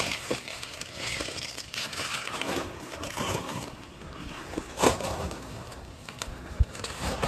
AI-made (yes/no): yes